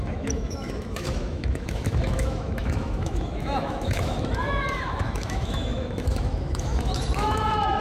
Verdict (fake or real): fake